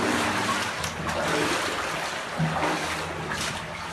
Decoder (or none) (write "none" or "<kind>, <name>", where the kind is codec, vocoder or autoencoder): none